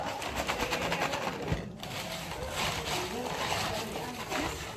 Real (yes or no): yes